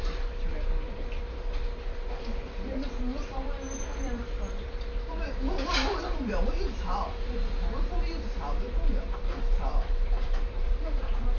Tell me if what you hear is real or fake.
fake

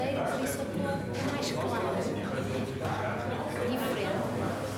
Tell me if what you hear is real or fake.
real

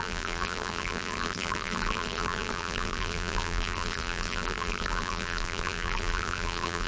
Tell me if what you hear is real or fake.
fake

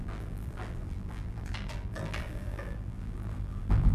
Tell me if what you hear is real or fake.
fake